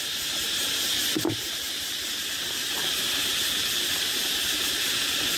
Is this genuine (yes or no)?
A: yes